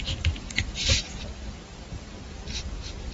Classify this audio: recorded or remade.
remade